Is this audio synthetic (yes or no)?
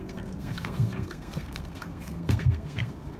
yes